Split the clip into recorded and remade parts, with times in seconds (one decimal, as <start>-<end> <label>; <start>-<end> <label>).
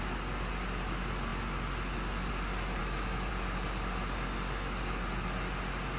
0.0-2.8 recorded; 2.8-3.3 remade; 3.3-6.0 recorded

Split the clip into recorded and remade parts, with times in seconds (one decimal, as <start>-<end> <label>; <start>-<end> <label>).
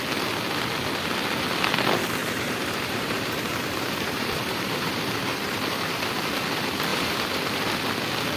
0.0-2.2 recorded; 2.2-6.0 remade; 6.0-6.9 recorded; 6.9-7.6 remade; 7.6-8.4 recorded